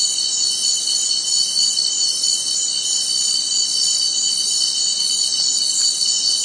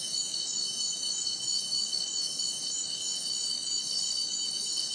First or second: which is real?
first